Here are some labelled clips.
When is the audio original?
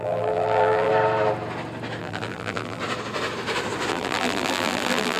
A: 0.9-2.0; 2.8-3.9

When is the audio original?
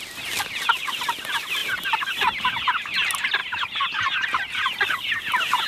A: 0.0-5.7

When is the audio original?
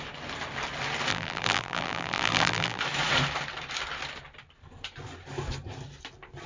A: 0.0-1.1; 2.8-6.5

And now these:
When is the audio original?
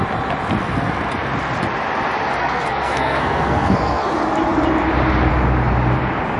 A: 0.0-2.4; 4.1-6.4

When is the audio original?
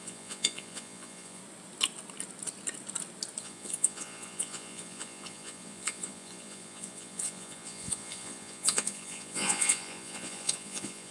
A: 1.4-3.4